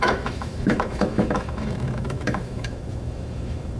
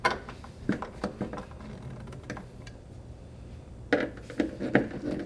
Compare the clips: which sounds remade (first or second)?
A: first